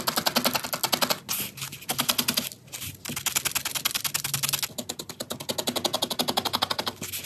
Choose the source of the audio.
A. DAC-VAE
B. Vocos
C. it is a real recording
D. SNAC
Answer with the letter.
C